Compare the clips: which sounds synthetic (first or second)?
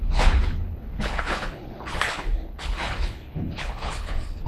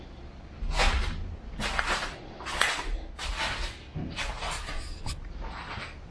first